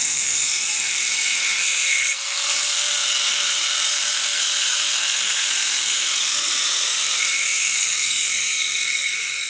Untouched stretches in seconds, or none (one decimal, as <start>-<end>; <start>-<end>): none